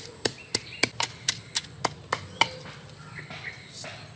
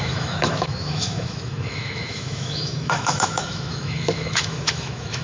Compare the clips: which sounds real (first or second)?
first